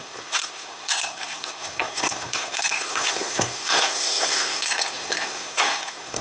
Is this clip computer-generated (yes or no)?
yes